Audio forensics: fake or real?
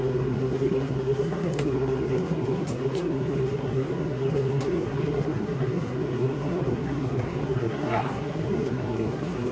fake